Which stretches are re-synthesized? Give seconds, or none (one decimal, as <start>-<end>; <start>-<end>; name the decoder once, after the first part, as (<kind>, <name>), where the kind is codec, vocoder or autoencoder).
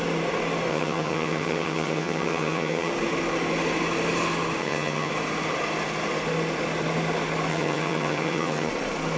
0.7-2.9 (vocoder, HiFi-GAN); 4.6-5.1; 7.5-8.7